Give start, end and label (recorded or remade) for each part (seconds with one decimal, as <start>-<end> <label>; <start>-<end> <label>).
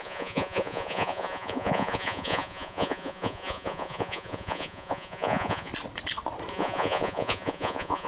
0.0-5.7 remade; 5.7-6.5 recorded; 6.5-8.1 remade